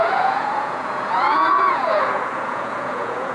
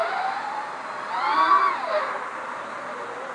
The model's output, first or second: first